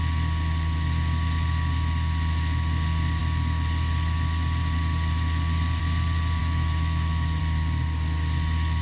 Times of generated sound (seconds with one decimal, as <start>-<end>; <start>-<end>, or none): 6.4-7.4